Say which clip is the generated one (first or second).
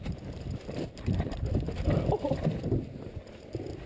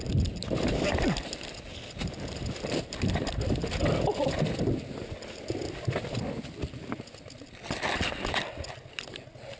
first